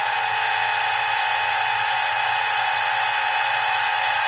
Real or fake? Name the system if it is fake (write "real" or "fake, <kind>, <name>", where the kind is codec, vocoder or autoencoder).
real